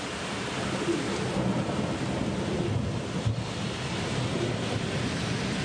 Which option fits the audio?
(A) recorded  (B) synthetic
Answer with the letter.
A